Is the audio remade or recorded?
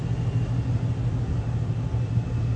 recorded